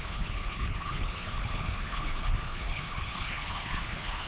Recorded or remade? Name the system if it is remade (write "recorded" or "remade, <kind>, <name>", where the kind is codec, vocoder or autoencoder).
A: remade, codec, HILCodec